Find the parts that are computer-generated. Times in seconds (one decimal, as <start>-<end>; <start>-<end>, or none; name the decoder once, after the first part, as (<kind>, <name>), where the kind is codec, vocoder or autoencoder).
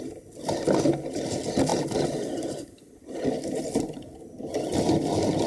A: none